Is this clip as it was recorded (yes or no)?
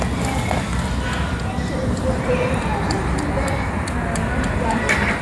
yes